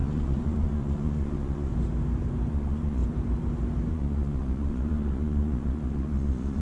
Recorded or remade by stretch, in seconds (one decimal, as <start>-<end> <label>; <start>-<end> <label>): 0.0-1.7 remade; 1.7-2.5 recorded; 2.5-3.0 remade; 3.0-3.9 recorded; 3.9-6.6 remade

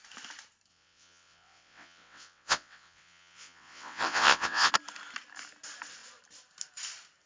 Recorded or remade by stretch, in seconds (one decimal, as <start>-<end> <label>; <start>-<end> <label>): 0.0-0.7 recorded; 0.7-4.7 remade; 4.7-7.3 recorded

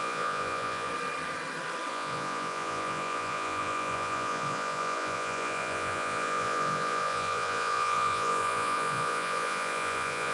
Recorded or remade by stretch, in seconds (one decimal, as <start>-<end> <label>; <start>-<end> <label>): 0.0-0.9 remade; 0.9-1.9 recorded; 1.9-10.3 remade

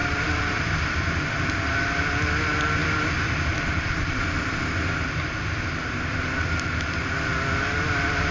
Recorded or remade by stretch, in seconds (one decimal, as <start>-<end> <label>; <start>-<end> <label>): 0.0-8.3 recorded

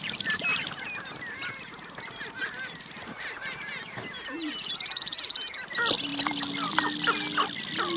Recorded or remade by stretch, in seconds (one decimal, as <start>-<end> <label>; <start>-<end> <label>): 0.0-8.0 recorded

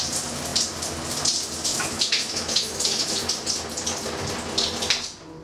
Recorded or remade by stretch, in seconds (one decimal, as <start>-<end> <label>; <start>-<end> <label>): 0.0-1.7 recorded; 1.7-3.3 remade; 3.3-5.4 recorded